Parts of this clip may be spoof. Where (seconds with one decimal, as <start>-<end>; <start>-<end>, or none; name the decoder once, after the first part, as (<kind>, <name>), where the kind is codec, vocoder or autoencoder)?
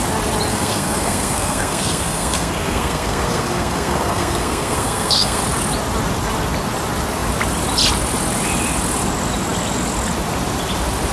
0.5-5.4 (codec, SNAC)